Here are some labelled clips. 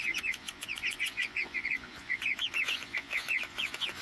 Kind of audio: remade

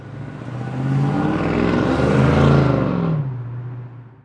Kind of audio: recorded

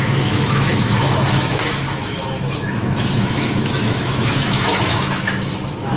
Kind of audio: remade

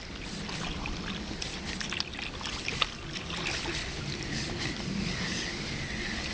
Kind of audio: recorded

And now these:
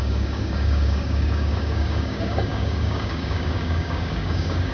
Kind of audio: remade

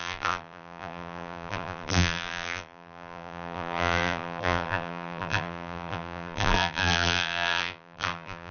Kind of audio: remade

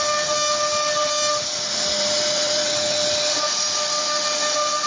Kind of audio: recorded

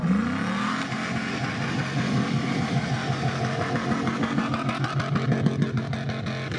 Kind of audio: recorded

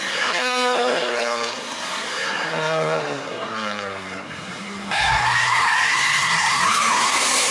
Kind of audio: remade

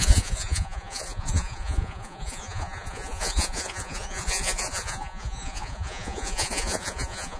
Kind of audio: remade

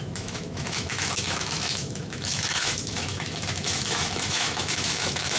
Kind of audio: remade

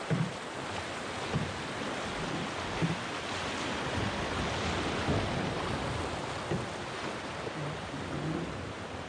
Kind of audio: recorded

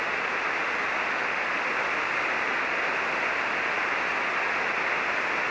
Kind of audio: recorded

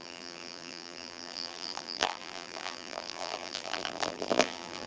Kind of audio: remade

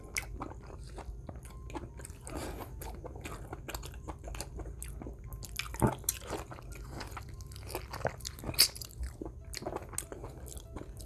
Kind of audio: recorded